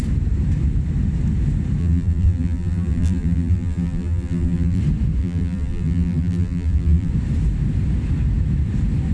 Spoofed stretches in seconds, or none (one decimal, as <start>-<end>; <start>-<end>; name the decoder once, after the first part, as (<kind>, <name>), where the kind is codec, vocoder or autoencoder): 1.8-4.8 (vocoder, BigVGAN v2); 5.2-7.1